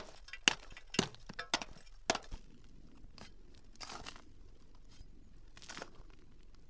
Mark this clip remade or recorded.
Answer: recorded